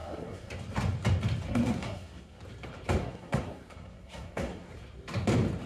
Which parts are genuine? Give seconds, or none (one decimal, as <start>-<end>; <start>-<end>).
0.5-1.5; 2.4-3.0; 4.7-5.7